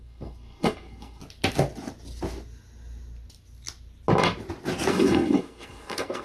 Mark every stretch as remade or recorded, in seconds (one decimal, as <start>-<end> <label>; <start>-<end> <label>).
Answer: 0.0-1.2 remade; 1.2-4.9 recorded; 4.9-6.2 remade